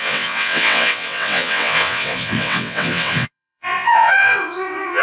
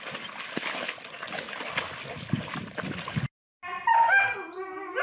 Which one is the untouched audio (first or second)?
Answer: second